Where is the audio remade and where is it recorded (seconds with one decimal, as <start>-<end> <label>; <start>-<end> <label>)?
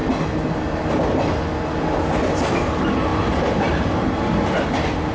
0.0-5.1 recorded